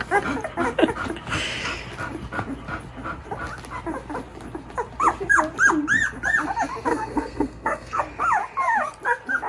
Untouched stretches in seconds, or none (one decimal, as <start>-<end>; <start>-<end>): 0.0-6.9; 8.0-9.5